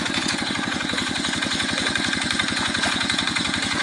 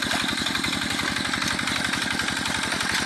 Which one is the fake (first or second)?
first